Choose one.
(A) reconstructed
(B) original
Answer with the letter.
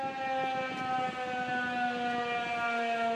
B